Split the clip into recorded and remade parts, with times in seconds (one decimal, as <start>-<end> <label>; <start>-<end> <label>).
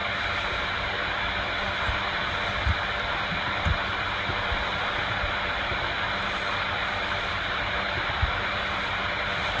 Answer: 0.0-9.6 recorded